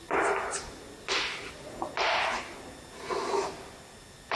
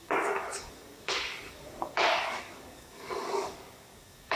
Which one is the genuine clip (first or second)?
first